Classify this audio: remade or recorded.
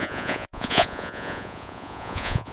remade